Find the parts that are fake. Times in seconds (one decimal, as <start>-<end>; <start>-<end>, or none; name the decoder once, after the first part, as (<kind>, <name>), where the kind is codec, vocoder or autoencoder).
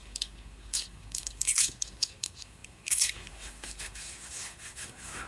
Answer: 0.0-5.3 (codec, SNAC)